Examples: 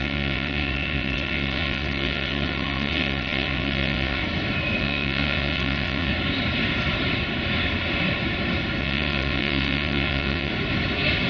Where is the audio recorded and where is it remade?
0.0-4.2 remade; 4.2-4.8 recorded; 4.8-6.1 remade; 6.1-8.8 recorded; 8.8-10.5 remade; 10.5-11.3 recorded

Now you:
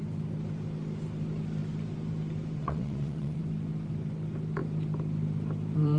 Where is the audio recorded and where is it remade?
0.0-2.6 recorded; 2.6-3.4 remade; 3.4-6.0 recorded

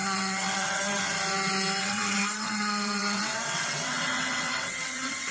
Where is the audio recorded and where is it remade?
0.0-0.8 remade; 0.8-1.8 recorded; 1.8-5.3 remade

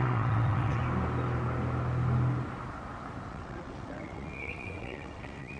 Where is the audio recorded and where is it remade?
0.0-0.8 remade; 0.8-3.3 recorded; 3.3-5.6 remade

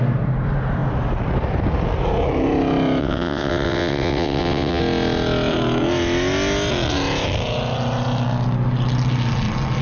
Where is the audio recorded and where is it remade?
0.0-3.0 recorded; 3.0-4.8 remade; 4.8-9.8 recorded

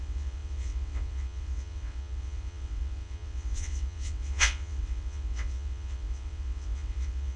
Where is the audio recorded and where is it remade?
0.0-7.4 remade